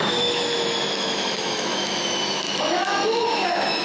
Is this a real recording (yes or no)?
no